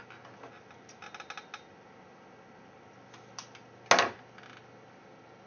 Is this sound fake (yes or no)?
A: no